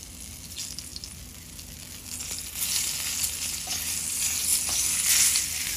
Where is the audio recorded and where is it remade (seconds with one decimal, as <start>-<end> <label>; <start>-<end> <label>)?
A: 0.0-5.8 recorded